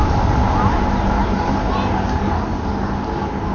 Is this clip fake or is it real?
real